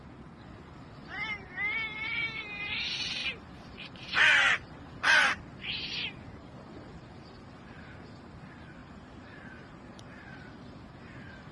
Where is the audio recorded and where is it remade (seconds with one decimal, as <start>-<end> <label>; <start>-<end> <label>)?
0.0-3.2 recorded; 3.2-5.4 remade; 5.4-8.8 recorded; 8.8-10.2 remade; 10.2-11.5 recorded